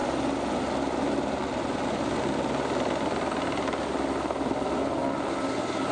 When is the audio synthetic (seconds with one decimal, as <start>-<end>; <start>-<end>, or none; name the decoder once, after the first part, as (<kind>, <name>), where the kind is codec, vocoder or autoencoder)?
none